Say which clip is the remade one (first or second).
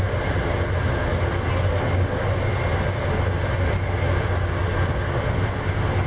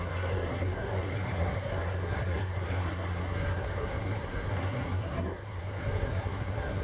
second